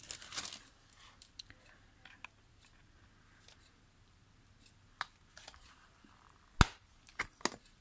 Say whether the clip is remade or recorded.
recorded